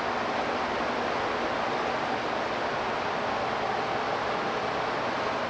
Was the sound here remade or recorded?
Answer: recorded